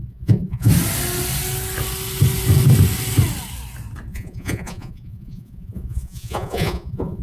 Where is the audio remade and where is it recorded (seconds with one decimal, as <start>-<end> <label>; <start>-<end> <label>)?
0.0-0.7 remade; 0.7-4.1 recorded; 4.1-7.2 remade